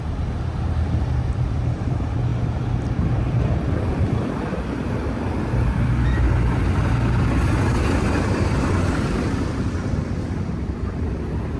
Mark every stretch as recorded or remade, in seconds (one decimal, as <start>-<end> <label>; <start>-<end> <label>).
0.0-2.3 recorded; 2.3-4.3 remade; 4.3-11.6 recorded